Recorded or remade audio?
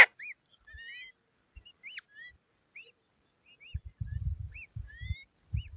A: recorded